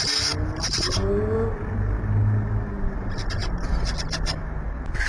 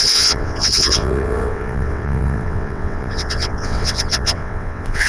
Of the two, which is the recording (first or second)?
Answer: first